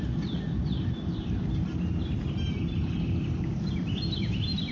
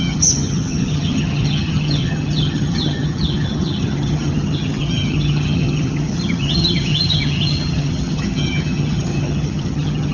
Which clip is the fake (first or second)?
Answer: second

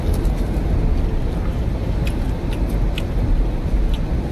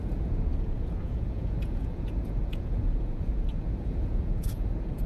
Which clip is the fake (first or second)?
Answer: second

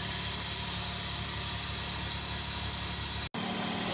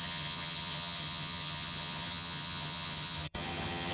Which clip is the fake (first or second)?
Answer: second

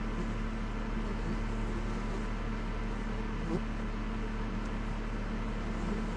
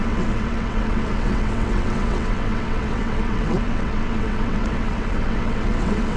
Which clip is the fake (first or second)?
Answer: second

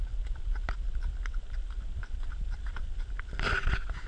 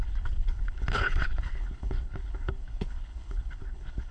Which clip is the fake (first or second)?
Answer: second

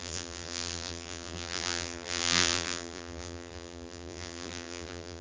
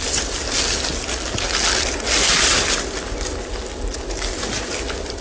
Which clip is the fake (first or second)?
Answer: first